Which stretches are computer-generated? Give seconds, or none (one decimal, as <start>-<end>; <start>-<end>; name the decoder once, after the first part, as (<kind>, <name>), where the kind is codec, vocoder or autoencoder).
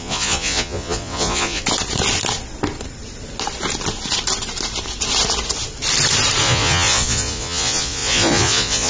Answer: 0.0-1.6 (vocoder, Vocos); 6.4-8.9